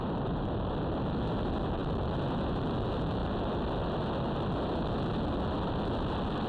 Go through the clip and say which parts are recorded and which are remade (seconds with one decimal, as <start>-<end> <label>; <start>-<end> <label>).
0.0-6.5 recorded